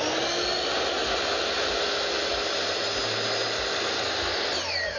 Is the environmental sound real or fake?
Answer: real